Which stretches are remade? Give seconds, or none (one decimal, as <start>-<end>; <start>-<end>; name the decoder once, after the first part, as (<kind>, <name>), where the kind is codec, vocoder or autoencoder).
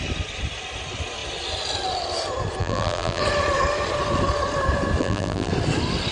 2.6-3.2 (vocoder, BigVGAN v2); 5.0-5.5